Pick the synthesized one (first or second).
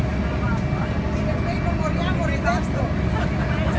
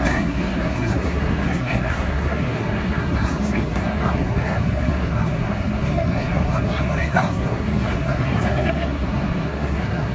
second